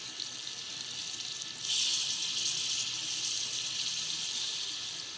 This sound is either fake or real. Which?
real